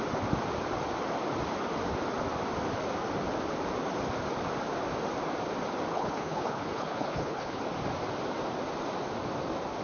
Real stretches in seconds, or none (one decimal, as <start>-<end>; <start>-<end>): 0.0-5.9; 7.6-9.8